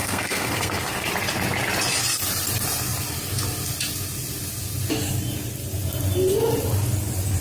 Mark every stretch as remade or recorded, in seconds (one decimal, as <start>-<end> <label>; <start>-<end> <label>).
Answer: 0.0-1.1 remade; 1.1-7.4 recorded